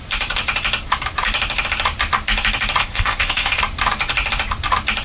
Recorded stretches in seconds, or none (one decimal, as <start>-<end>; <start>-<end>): 0.0-2.8; 3.6-5.0